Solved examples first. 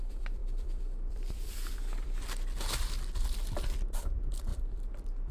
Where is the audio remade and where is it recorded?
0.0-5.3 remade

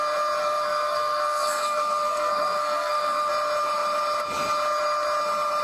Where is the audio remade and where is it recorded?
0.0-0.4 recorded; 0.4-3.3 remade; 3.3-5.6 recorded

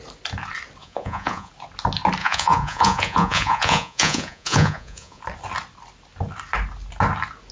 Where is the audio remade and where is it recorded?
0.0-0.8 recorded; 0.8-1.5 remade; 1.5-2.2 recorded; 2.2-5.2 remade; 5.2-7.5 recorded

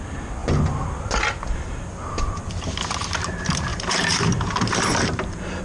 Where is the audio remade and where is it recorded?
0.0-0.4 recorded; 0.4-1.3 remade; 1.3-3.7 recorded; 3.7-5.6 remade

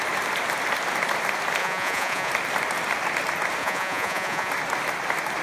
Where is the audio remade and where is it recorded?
0.0-1.6 recorded; 1.6-2.3 remade; 2.3-3.6 recorded; 3.6-4.5 remade; 4.5-5.4 recorded

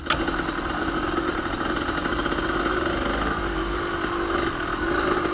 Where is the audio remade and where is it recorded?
0.0-5.3 recorded